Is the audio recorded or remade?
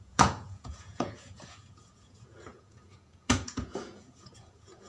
remade